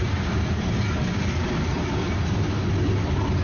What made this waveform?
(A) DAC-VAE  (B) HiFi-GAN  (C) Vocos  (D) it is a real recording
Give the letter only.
D